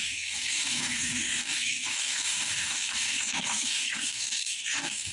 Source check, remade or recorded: remade